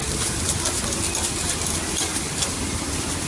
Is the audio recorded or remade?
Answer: recorded